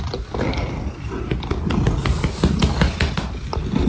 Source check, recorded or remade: recorded